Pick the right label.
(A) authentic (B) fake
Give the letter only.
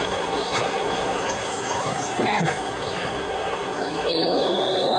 B